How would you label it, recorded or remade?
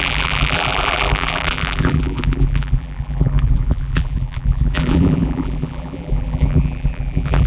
remade